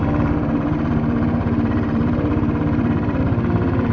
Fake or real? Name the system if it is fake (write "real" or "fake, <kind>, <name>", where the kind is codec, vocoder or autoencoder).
fake, vocoder, BigVGAN v2